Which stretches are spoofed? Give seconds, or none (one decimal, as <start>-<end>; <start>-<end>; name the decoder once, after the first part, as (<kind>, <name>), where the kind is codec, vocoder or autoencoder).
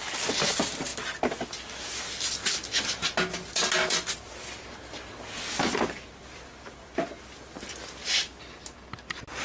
none